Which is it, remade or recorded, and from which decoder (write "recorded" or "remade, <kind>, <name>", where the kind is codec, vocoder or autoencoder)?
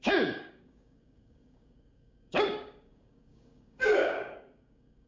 remade, codec, DAC